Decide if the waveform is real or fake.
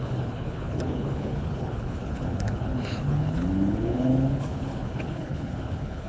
fake